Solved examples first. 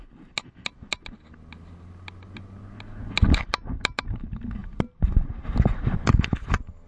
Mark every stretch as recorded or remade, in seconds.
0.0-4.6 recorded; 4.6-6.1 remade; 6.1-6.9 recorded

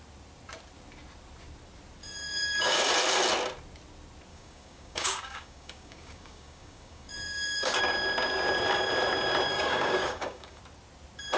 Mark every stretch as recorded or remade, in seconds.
0.0-2.0 recorded; 2.0-2.9 remade; 2.9-4.3 recorded; 4.3-7.8 remade; 7.8-9.5 recorded; 9.5-10.6 remade; 10.6-11.4 recorded

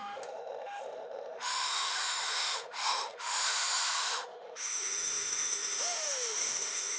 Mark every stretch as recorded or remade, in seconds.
0.0-7.0 remade